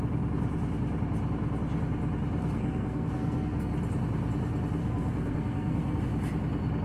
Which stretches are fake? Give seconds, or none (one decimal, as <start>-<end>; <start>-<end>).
2.4-3.7; 4.8-6.0